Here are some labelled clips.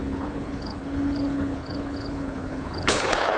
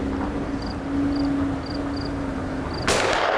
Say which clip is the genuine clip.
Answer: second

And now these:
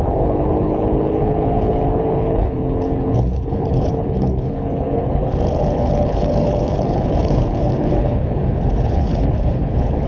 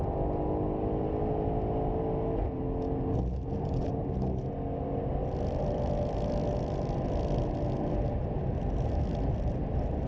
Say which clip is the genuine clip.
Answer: second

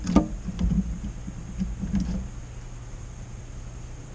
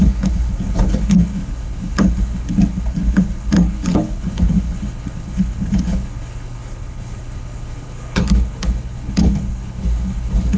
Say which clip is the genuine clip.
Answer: first